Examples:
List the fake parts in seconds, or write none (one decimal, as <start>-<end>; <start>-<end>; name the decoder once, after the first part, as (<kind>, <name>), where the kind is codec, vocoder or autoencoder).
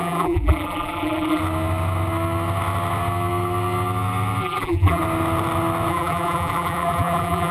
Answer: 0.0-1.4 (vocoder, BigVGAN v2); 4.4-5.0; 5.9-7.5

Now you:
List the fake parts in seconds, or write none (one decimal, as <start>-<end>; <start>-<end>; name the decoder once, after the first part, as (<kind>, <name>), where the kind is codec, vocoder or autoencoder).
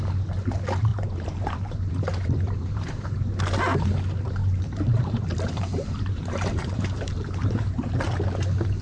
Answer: 0.9-3.1 (vocoder, BigVGAN v2); 4.4-8.0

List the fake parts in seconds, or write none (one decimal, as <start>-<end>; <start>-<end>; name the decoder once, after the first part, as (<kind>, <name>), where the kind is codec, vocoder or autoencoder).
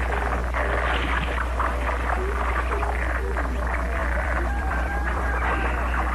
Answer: 4.0-5.3 (vocoder, BigVGAN v2)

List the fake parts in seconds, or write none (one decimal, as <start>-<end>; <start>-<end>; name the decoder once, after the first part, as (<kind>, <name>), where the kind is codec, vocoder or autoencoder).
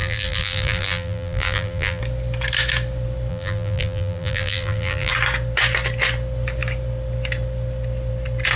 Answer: 0.0-2.0 (vocoder, BigVGAN v2); 3.3-5.1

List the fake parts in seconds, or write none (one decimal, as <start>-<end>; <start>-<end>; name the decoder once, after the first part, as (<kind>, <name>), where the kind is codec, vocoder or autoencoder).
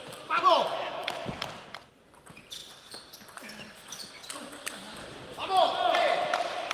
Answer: 0.0-6.7 (vocoder, BigVGAN v2)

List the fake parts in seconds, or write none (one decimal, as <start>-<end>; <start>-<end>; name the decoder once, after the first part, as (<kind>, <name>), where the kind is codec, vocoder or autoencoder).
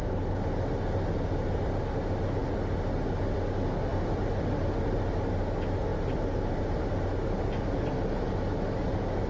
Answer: 3.9-4.8 (vocoder, BigVGAN v2)